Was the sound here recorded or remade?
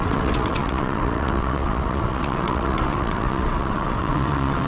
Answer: remade